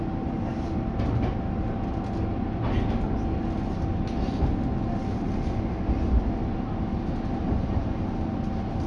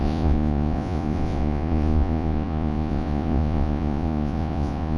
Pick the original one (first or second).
first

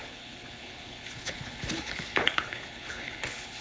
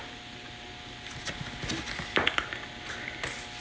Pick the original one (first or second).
second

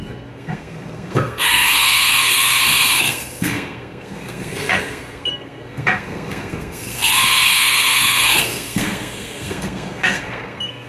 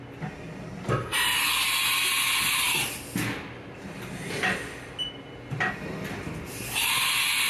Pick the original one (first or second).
second